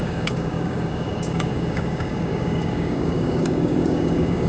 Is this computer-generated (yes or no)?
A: yes